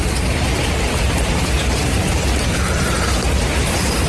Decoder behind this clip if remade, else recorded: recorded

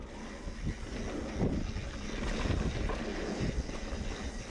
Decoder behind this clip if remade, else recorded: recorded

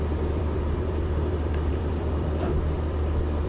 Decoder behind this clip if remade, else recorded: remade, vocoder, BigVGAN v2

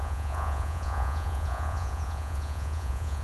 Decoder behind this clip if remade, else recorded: remade, vocoder, Vocos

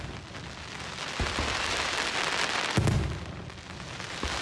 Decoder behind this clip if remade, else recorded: recorded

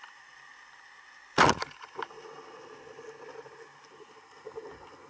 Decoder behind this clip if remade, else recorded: recorded